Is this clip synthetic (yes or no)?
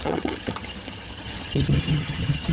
yes